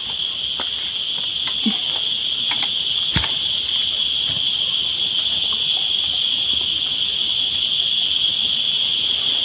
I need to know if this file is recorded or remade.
recorded